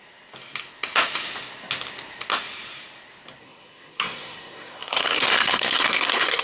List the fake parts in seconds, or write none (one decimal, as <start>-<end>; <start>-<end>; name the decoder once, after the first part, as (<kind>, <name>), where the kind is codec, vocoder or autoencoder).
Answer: 3.4-6.4 (codec, SNAC)